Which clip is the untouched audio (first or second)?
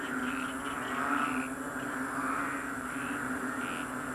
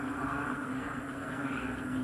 first